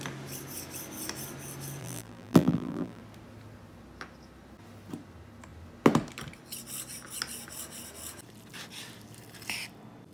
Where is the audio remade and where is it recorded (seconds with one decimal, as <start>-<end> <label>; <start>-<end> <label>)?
0.0-1.8 recorded; 1.8-3.0 remade; 3.0-10.1 recorded